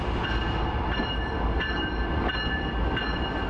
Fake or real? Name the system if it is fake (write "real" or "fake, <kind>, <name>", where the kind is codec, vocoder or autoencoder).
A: real